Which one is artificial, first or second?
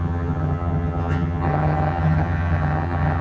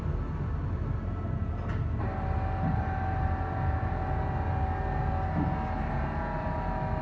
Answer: first